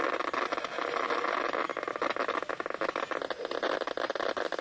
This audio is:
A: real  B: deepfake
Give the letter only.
A